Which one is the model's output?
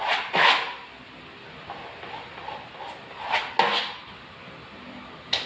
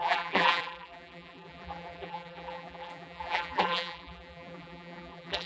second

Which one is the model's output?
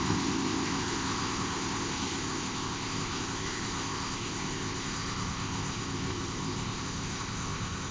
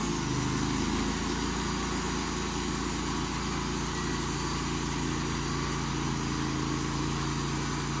first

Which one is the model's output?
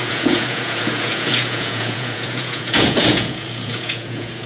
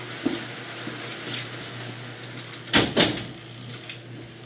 first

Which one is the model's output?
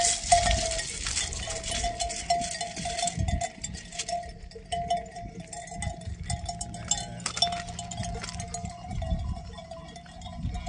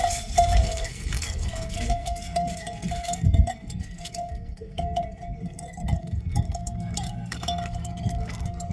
second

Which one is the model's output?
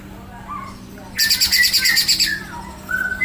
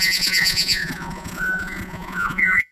second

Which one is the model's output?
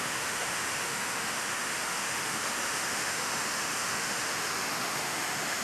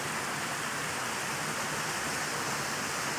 first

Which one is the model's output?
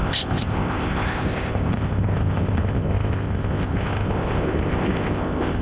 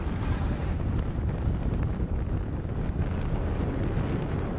first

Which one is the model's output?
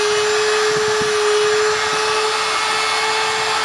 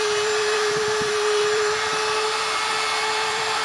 second